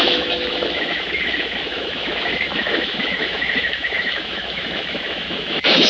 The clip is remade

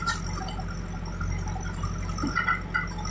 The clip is recorded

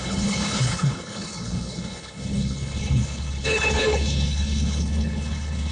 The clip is remade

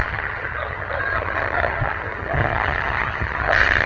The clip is remade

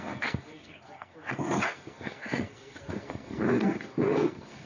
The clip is remade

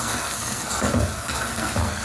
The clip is remade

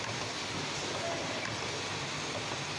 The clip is recorded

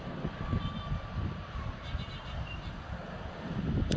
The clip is remade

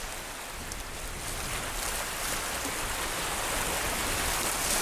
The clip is recorded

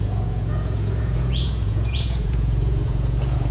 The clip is remade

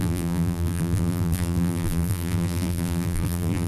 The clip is remade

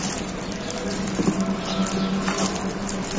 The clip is recorded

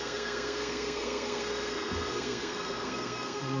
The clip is remade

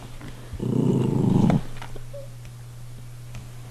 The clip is recorded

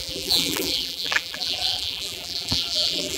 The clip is remade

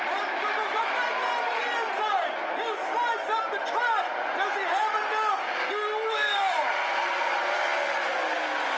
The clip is recorded